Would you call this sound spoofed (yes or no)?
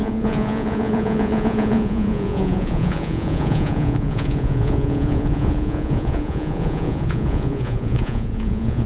yes